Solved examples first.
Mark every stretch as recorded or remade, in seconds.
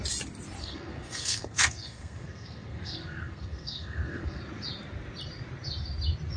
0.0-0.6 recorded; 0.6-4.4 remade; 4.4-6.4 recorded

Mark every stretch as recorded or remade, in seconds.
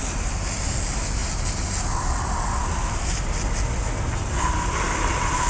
0.0-5.5 recorded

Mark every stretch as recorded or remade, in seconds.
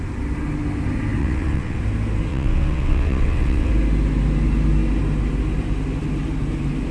0.0-1.2 recorded; 1.2-1.8 remade; 1.8-2.3 recorded; 2.3-3.7 remade; 3.7-6.9 recorded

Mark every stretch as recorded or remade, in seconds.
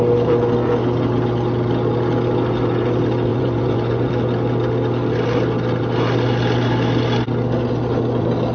0.0-3.3 recorded; 3.3-4.1 remade; 4.1-8.5 recorded